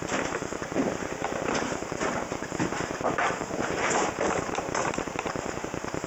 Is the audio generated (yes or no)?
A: yes